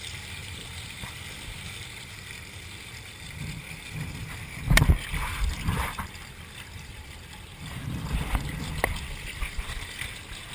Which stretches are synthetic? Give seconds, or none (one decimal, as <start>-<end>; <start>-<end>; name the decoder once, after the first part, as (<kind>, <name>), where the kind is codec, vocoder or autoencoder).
0.4-4.6 (vocoder, BigVGAN v2); 5.3-8.8